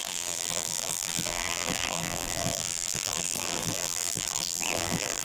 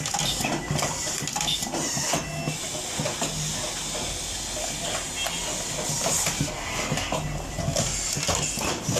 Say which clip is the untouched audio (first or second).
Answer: second